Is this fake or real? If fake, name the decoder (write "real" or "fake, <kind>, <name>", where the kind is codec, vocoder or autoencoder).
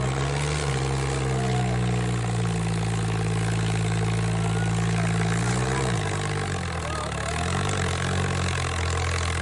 real